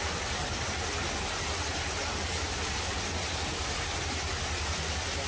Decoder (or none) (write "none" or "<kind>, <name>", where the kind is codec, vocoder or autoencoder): none